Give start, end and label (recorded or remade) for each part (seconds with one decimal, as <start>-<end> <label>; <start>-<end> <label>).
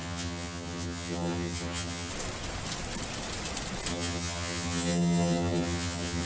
0.0-2.1 remade; 2.1-3.9 recorded; 3.9-6.3 remade